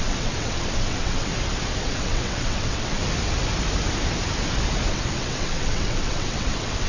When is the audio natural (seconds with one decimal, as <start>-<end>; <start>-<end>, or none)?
1.3-1.8; 3.0-4.9